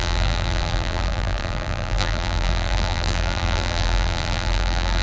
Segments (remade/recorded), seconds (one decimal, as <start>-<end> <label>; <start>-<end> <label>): 0.0-5.0 remade